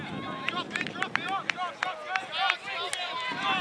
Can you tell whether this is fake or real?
real